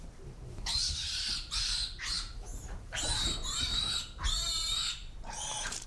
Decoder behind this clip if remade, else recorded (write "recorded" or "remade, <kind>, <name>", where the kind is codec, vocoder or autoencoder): remade, vocoder, BigVGAN v2